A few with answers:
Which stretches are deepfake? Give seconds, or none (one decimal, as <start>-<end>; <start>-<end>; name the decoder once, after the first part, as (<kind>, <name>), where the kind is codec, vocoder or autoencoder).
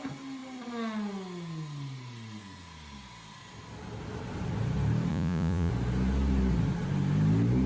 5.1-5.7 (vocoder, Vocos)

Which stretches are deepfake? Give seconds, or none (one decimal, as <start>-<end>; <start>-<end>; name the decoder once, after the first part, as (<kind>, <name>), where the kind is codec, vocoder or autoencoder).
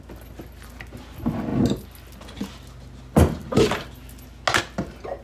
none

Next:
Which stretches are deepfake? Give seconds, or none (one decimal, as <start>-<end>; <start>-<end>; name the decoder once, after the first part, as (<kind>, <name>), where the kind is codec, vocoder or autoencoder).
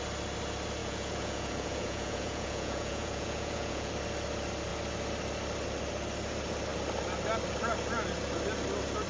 0.8-3.9 (vocoder, Vocos)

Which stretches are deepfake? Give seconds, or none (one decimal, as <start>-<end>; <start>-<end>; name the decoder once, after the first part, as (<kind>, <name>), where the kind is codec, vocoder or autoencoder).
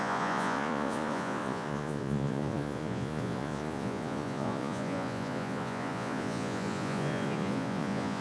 0.0-8.2 (vocoder, Vocos)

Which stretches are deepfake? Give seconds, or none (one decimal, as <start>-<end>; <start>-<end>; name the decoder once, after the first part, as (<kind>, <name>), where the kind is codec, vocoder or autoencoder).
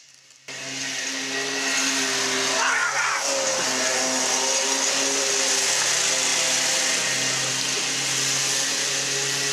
none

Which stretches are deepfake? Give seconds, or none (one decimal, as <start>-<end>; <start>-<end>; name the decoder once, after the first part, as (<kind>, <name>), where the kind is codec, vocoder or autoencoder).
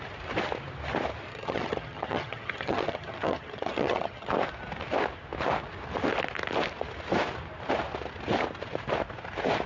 1.3-4.3 (vocoder, HiFi-GAN)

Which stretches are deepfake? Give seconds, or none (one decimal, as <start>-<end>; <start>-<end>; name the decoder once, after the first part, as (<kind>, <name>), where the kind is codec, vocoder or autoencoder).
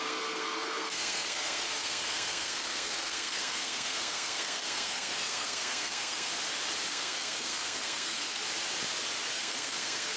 0.0-6.3 (codec, SNAC); 6.9-8.4; 9.3-10.2